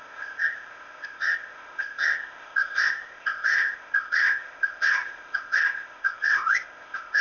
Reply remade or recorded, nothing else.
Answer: remade